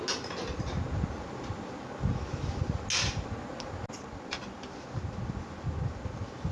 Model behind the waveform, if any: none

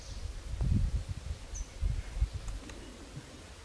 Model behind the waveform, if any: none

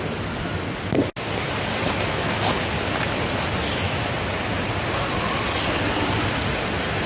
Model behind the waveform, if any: none